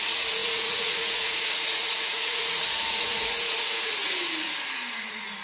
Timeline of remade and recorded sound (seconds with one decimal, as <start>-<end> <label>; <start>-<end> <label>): 0.0-4.0 remade; 4.0-5.0 recorded; 5.0-5.4 remade